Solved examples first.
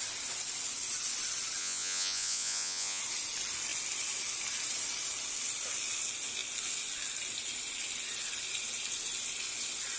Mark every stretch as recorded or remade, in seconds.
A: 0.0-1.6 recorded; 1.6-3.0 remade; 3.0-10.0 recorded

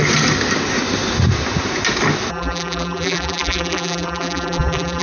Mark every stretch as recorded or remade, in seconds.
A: 0.0-2.3 recorded; 2.3-5.0 remade

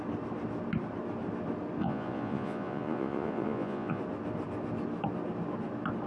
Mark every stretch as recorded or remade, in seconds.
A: 0.0-1.8 recorded; 1.8-4.0 remade; 4.0-6.1 recorded